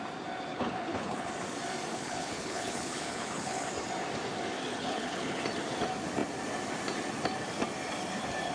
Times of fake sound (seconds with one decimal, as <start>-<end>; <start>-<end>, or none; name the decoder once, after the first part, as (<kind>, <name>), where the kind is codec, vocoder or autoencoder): 0.5-1.3 (codec, HILCodec); 1.9-3.7; 4.7-5.4